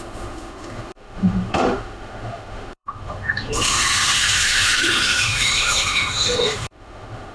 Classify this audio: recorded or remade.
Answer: remade